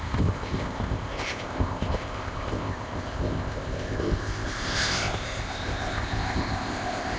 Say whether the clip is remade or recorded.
remade